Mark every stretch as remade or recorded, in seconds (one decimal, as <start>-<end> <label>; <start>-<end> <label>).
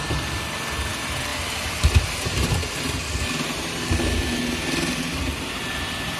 0.0-6.2 recorded